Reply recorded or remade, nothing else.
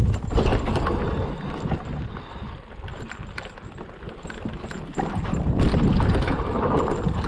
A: recorded